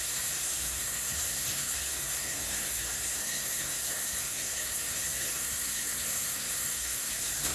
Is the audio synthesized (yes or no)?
yes